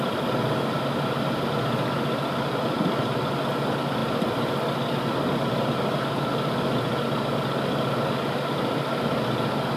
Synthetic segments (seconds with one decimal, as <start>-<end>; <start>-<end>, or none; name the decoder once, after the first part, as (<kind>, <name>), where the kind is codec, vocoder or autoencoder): none